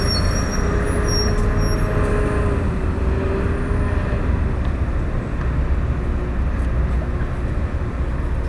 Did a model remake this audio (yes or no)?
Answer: no